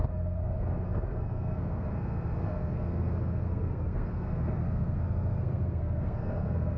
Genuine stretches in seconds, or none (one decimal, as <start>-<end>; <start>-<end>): none